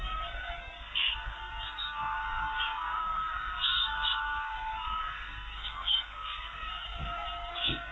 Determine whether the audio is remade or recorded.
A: remade